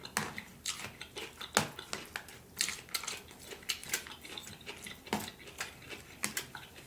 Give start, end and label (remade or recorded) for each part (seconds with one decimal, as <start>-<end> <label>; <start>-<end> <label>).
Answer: 0.0-6.9 recorded